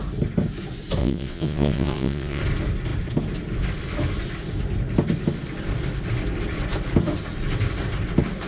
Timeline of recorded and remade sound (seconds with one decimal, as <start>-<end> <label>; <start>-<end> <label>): 0.0-1.0 recorded; 1.0-2.4 remade; 2.4-8.5 recorded